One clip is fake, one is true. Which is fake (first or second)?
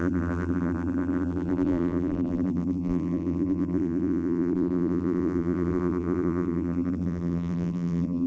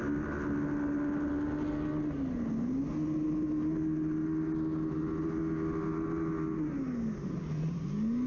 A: first